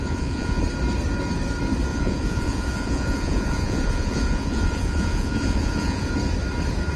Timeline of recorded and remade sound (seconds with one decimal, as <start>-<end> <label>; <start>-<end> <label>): 0.0-0.6 remade; 0.6-1.9 recorded; 1.9-6.1 remade; 6.1-7.0 recorded